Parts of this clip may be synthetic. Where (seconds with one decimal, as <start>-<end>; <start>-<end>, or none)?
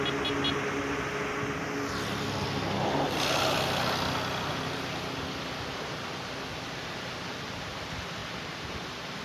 8.2-9.2